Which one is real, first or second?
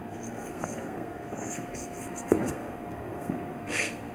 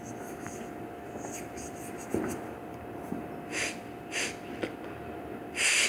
second